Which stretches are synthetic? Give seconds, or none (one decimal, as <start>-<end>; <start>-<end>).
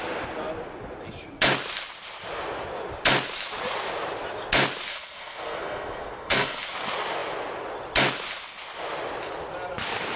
4.9-6.6